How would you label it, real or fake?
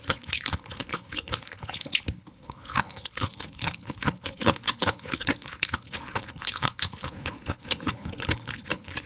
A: fake